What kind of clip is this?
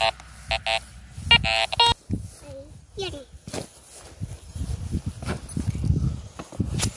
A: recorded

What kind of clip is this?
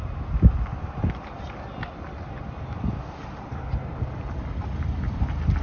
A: recorded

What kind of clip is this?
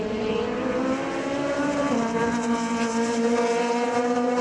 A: recorded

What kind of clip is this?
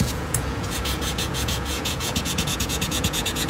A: remade